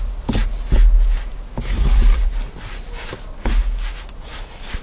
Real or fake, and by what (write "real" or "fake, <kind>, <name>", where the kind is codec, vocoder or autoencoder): real